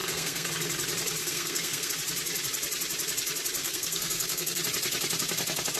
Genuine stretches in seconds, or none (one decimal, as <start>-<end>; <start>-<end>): 0.5-1.2; 1.9-3.6; 4.6-5.8